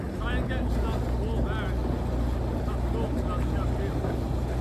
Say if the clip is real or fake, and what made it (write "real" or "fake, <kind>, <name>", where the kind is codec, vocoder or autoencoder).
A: real